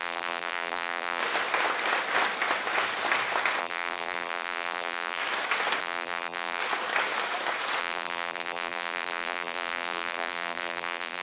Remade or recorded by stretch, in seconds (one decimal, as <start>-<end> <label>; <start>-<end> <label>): 0.0-1.2 remade; 1.2-3.6 recorded; 3.6-5.2 remade; 5.2-5.8 recorded; 5.8-6.6 remade; 6.6-7.8 recorded; 7.8-11.2 remade